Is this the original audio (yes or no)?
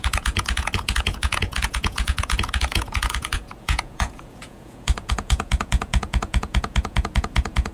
no